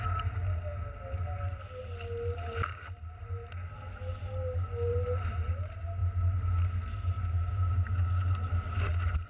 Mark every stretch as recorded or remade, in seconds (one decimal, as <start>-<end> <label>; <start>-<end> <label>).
0.0-4.9 recorded; 4.9-5.5 remade; 5.5-9.3 recorded